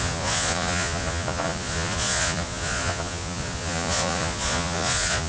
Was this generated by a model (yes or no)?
yes